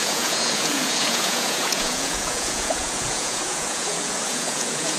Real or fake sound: fake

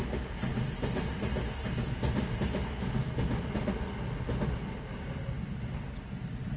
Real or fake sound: real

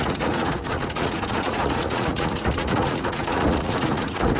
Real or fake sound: fake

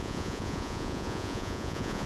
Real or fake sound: fake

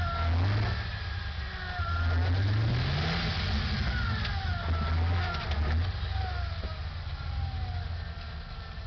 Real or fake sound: real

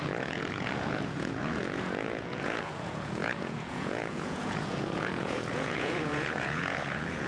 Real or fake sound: fake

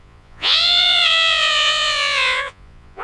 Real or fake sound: fake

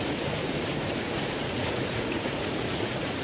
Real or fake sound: fake